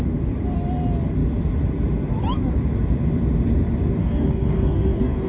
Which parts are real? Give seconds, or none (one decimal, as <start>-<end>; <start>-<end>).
0.0-4.0